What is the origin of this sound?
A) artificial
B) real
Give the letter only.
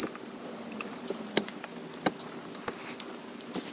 B